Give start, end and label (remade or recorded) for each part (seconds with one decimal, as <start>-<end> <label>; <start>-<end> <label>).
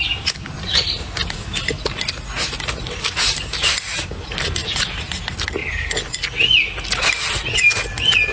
0.0-4.6 recorded; 4.6-5.1 remade; 5.1-8.3 recorded